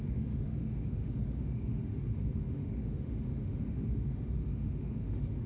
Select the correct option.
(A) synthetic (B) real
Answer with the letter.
A